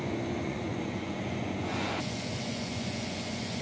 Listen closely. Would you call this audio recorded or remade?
remade